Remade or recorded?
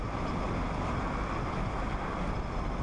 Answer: recorded